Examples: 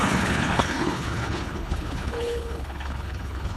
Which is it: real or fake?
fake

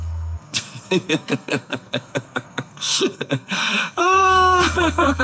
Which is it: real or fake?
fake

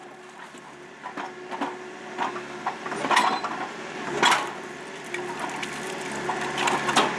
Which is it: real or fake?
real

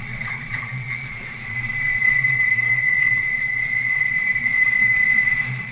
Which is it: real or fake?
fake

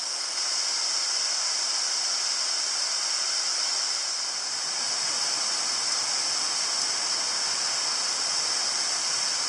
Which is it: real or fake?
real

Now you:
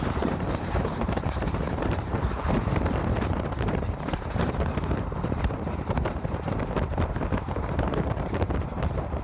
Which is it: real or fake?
fake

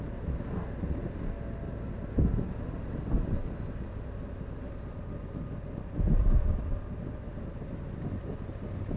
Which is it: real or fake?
real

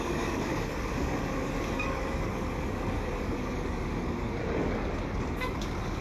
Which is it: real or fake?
fake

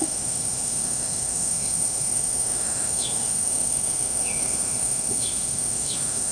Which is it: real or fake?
fake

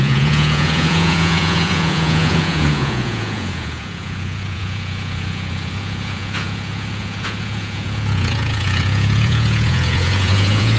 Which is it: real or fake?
fake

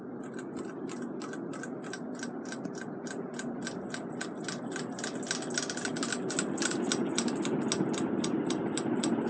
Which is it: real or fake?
real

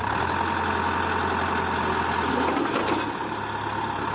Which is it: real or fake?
real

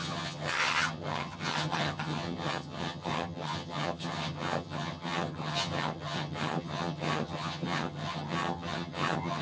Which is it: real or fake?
fake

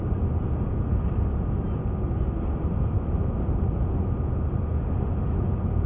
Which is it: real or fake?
real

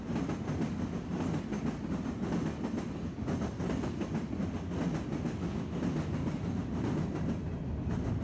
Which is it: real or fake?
real